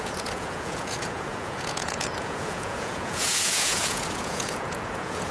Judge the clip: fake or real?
fake